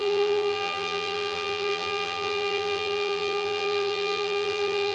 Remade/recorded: remade